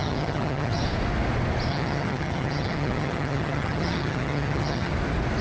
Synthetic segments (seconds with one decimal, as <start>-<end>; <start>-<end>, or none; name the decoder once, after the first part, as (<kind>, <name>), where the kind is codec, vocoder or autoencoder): 0.0-0.8 (vocoder, HiFi-GAN); 1.7-4.9